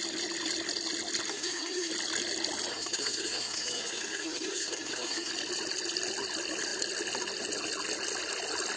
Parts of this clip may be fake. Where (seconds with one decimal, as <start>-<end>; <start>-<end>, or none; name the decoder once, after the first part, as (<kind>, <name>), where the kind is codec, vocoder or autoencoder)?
1.3-1.9 (codec, SNAC); 2.7-5.3